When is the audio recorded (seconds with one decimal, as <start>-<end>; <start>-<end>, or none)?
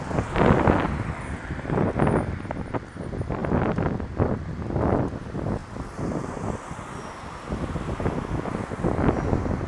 0.0-5.6; 7.0-9.7